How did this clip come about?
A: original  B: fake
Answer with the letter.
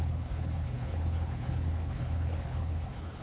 B